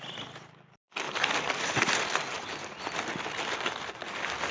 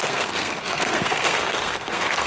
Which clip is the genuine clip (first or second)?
first